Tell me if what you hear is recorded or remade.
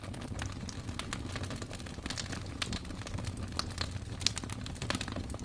recorded